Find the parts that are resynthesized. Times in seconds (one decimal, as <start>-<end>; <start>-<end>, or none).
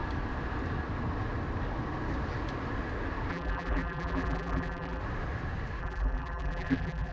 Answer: 3.3-5.0; 5.8-7.1